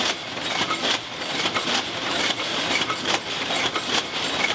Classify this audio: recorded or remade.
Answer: remade